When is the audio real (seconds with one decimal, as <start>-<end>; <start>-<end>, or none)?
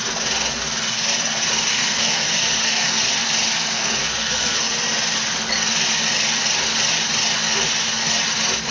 0.0-1.7; 3.0-3.6; 4.7-8.7